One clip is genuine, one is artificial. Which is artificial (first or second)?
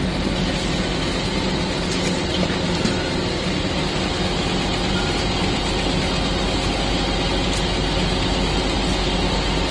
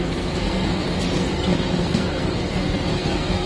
second